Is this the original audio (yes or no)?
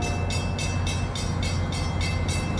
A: yes